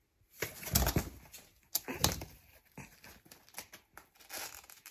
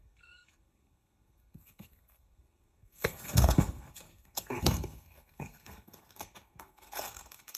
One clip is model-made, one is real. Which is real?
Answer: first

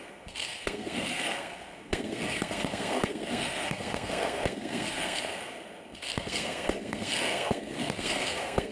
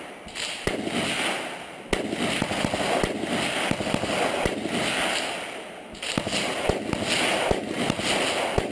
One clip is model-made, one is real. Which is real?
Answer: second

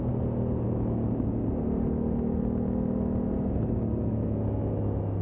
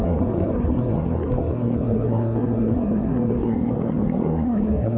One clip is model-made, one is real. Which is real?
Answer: first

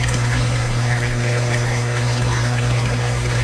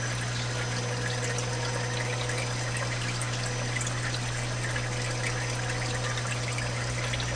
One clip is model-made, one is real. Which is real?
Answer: second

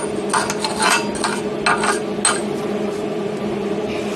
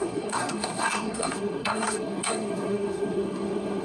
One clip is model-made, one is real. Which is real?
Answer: first